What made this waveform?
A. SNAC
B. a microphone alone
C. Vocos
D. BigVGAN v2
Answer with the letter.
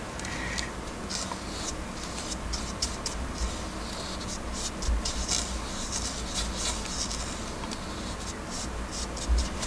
B